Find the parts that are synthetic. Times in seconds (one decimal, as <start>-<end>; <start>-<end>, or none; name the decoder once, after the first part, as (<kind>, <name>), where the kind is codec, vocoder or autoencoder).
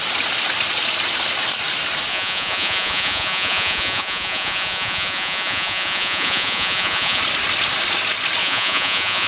2.1-7.2 (vocoder, Vocos); 8.4-9.3